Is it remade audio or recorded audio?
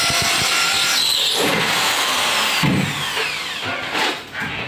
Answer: recorded